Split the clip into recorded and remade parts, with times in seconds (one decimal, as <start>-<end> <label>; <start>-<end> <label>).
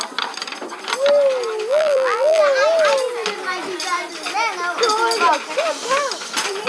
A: 0.0-1.7 recorded; 1.7-2.4 remade; 2.4-6.7 recorded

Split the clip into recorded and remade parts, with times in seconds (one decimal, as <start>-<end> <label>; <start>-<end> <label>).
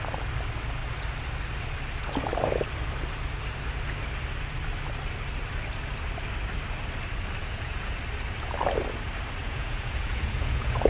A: 0.0-7.4 recorded; 7.4-8.0 remade; 8.0-9.4 recorded; 9.4-10.9 remade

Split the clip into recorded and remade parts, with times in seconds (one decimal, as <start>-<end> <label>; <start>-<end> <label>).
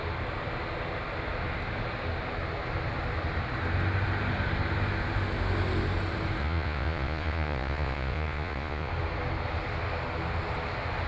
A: 0.0-6.4 recorded; 6.4-8.9 remade; 8.9-11.1 recorded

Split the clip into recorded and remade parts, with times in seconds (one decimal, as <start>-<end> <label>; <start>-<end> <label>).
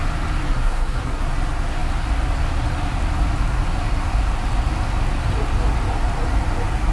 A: 0.0-0.5 recorded; 0.5-1.2 remade; 1.2-6.9 recorded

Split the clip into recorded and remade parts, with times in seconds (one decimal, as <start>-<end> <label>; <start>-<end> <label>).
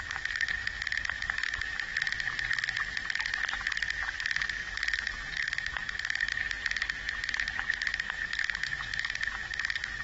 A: 0.0-1.9 remade; 1.9-4.7 recorded; 4.7-6.3 remade; 6.3-7.9 recorded; 7.9-10.0 remade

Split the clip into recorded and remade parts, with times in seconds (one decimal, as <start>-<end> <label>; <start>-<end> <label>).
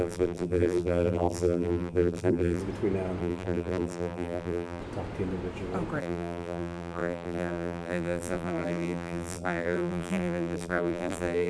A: 0.0-2.6 remade; 2.6-3.2 recorded; 3.2-4.8 remade; 4.8-6.0 recorded; 6.0-11.5 remade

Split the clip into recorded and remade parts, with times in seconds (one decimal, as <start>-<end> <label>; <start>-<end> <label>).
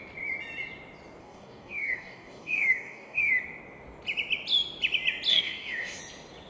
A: 0.0-1.2 recorded; 1.2-3.3 remade; 3.3-5.3 recorded; 5.3-6.0 remade; 6.0-6.5 recorded